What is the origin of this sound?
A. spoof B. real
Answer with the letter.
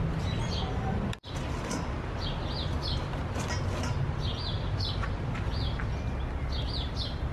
B